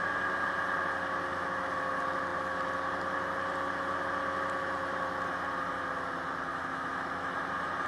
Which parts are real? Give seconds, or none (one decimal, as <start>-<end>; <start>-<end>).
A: 0.0-1.3; 1.8-6.5; 7.3-7.9